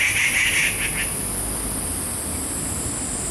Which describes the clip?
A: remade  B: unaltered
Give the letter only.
B